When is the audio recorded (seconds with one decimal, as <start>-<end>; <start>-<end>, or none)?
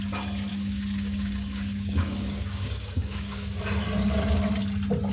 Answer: 0.0-0.5; 3.6-5.1